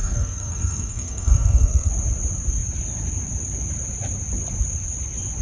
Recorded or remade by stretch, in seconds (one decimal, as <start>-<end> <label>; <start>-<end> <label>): 0.0-1.9 remade; 1.9-5.4 recorded